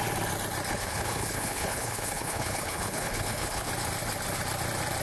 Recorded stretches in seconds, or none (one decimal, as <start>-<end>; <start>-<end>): 0.0-0.7; 3.7-5.0